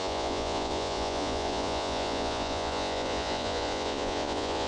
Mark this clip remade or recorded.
remade